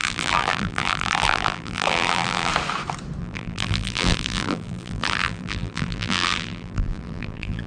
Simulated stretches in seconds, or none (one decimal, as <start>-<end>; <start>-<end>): 0.0-2.5; 3.2-7.7